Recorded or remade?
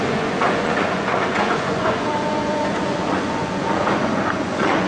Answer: remade